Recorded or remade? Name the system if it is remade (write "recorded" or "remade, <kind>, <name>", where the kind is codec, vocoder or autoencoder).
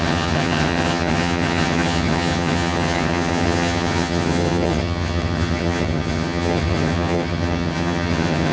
remade, vocoder, HiFi-GAN